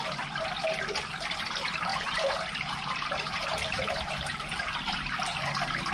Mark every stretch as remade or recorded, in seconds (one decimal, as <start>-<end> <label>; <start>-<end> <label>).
0.0-1.9 recorded; 1.9-5.4 remade; 5.4-5.9 recorded